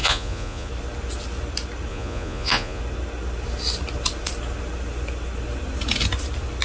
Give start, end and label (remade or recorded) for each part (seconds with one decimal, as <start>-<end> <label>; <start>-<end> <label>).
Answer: 0.0-0.7 remade; 0.7-1.9 recorded; 1.9-2.8 remade; 2.8-6.6 recorded